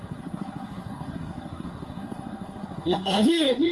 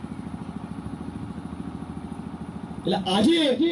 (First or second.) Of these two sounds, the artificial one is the first